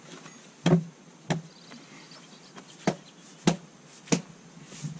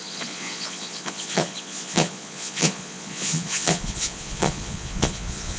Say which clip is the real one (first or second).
first